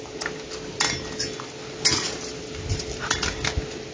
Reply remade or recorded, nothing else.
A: recorded